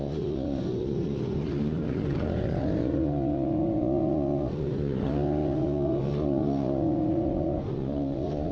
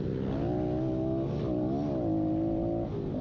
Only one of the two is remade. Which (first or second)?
first